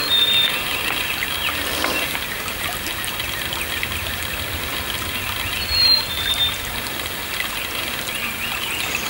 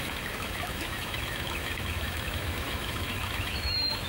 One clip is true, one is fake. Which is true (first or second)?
first